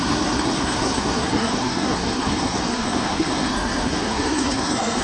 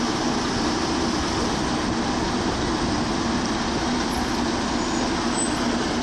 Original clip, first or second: second